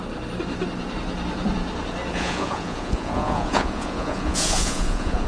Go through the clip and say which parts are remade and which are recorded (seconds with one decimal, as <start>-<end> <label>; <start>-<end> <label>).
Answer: 0.0-2.1 recorded; 2.1-5.3 remade